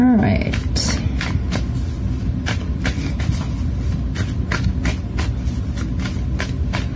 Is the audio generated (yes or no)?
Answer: no